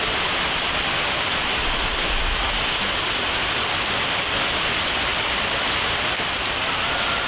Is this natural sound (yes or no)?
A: yes